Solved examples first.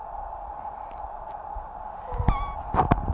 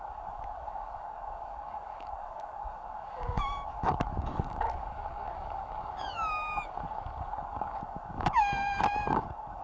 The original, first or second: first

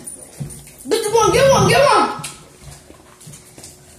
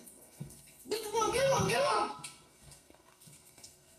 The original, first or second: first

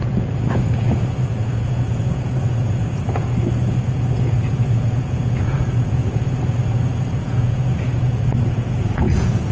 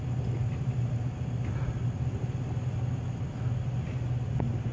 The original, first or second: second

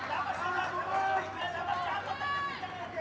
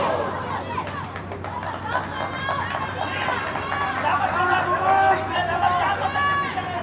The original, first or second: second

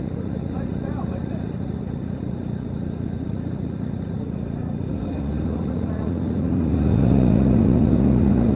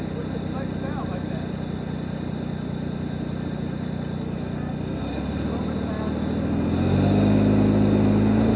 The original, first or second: second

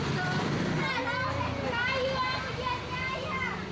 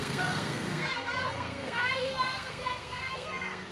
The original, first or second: first